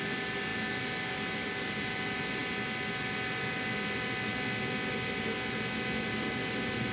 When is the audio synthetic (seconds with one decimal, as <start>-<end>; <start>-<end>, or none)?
none